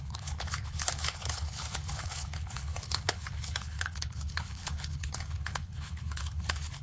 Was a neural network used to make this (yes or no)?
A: yes